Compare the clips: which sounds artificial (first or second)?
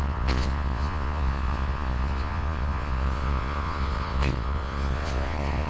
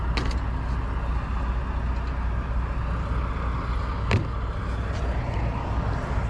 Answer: first